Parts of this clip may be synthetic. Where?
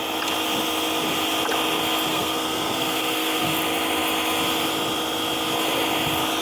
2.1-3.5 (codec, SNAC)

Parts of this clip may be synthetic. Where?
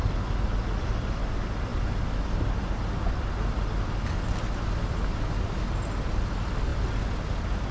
none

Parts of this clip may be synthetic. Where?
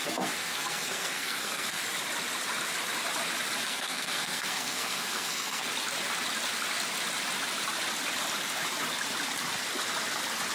0.0-1.8 (codec, SNAC); 3.6-5.7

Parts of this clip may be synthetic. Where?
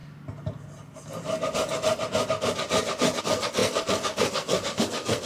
3.2-5.3 (codec, SNAC)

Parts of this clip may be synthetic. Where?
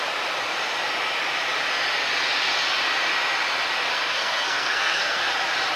3.9-5.2 (codec, SNAC)